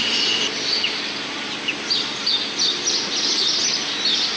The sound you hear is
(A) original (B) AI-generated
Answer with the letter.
A